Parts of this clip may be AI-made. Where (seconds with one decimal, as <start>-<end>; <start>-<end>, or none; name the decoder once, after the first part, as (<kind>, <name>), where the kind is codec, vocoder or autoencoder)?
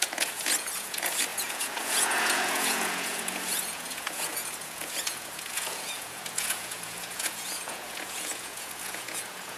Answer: 0.0-9.6 (vocoder, Vocos)